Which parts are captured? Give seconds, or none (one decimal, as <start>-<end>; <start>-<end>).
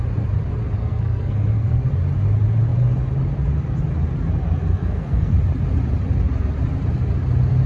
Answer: 0.0-0.8; 1.9-4.7; 5.3-7.7